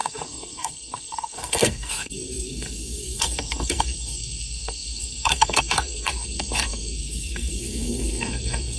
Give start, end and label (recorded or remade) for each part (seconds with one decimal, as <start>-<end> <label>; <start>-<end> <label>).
0.0-8.8 remade